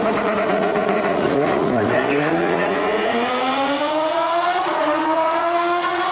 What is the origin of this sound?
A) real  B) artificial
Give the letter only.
B